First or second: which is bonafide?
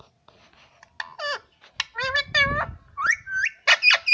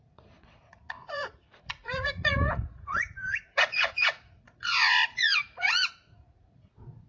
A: first